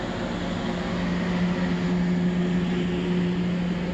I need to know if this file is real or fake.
real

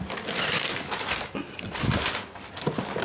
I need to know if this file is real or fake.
real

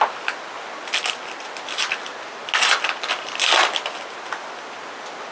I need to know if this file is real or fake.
real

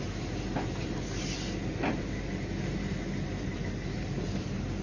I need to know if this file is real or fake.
real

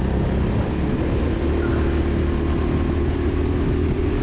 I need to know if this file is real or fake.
real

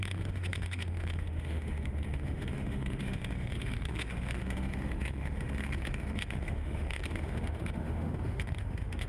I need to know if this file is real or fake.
fake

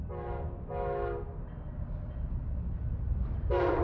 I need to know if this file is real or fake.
real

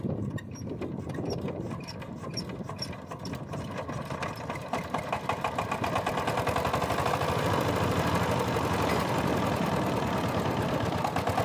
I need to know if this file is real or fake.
fake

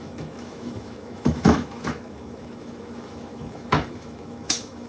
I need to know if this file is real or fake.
fake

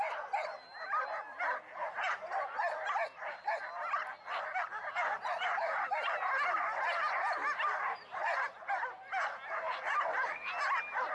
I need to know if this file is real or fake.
real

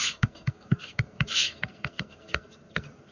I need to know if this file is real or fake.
fake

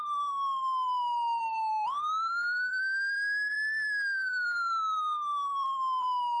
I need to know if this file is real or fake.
fake